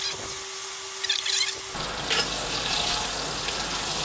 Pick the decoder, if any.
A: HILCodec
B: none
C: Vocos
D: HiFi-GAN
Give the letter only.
B